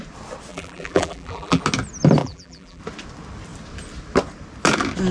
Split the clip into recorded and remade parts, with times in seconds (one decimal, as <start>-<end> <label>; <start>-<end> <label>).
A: 0.0-0.5 recorded; 0.5-1.6 remade; 1.6-2.2 recorded; 2.2-2.8 remade; 2.8-5.1 recorded